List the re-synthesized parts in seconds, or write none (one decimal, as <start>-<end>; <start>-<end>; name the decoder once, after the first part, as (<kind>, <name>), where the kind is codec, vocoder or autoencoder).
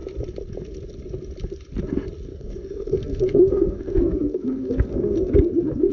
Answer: 2.3-5.9 (codec, SNAC)